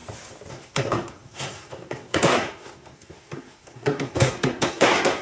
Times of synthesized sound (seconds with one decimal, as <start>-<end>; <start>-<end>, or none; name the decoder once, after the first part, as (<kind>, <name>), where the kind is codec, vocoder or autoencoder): 0.5-5.2 (codec, SNAC)